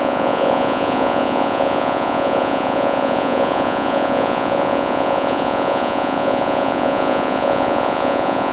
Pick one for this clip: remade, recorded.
remade